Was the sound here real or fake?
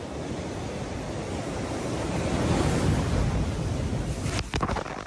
real